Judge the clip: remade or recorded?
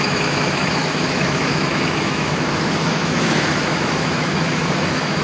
remade